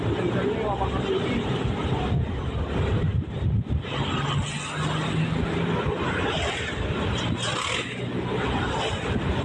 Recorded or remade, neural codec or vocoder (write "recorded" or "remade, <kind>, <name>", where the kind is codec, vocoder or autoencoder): recorded